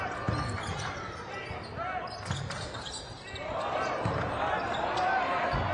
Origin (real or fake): real